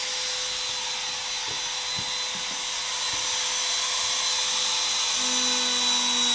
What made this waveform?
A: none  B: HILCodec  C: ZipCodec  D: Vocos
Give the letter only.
A